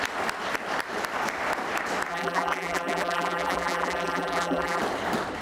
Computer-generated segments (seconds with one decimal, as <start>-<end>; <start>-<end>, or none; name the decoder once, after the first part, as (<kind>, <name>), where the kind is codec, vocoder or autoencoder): 2.1-4.8 (vocoder, BigVGAN v2)